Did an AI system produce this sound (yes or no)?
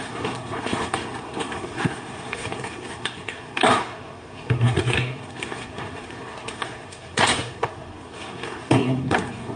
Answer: yes